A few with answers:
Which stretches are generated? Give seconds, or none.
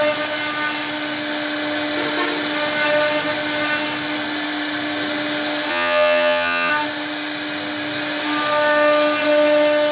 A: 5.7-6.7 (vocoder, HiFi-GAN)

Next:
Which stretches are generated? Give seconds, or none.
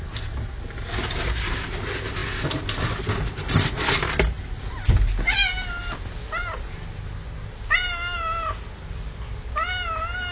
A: none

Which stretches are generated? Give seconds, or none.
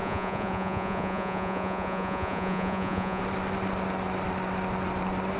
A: 0.0-3.2 (vocoder, Vocos)